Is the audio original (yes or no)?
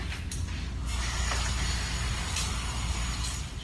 yes